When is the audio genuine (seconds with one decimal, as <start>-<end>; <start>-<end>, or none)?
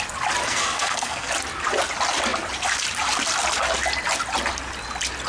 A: 0.0-0.4; 1.3-5.3